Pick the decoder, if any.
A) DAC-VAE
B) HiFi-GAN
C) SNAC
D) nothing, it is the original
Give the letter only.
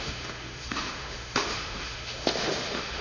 A